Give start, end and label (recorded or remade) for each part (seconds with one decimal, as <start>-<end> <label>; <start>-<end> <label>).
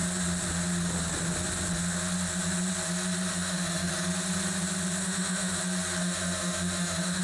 0.0-3.3 recorded; 3.3-3.9 remade; 3.9-5.0 recorded; 5.0-5.6 remade; 5.6-6.0 recorded; 6.0-7.2 remade